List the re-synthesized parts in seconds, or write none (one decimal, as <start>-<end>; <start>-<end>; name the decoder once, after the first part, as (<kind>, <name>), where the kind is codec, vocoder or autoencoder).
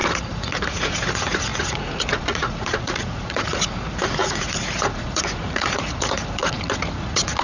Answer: 0.0-7.4 (vocoder, Vocos)